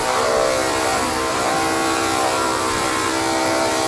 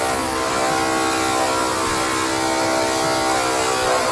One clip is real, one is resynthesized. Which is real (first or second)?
second